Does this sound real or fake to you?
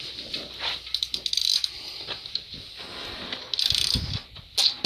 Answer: real